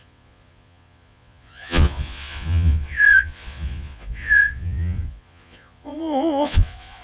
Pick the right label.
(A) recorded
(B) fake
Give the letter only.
B